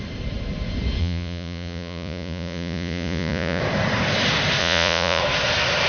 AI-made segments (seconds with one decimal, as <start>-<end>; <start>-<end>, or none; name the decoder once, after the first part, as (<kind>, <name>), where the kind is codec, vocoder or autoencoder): 1.0-3.6 (vocoder, Vocos); 4.6-5.2